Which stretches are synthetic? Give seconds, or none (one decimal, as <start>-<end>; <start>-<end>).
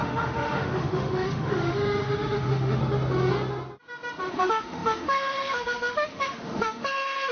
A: 0.0-2.8; 4.3-7.3